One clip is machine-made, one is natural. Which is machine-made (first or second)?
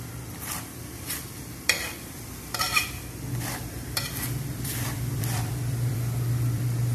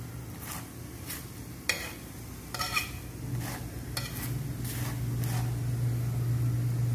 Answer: first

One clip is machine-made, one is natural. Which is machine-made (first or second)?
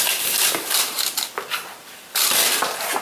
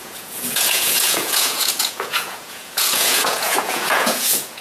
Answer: second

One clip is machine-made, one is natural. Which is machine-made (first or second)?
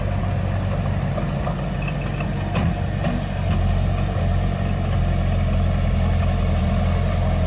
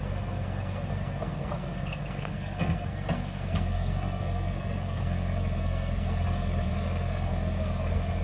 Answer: second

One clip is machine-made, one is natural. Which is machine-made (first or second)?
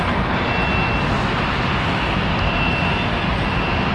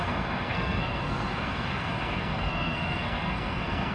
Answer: second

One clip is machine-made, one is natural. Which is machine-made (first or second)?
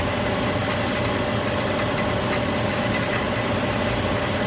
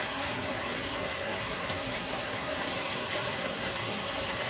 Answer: second